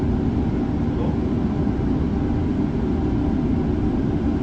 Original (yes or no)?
yes